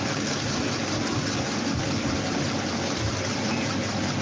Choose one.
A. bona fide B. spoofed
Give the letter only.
A